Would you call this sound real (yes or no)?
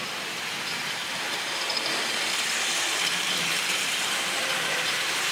no